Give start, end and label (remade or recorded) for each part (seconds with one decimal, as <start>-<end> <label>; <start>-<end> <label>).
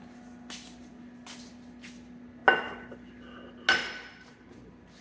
0.0-3.8 recorded; 3.8-4.4 remade; 4.4-5.0 recorded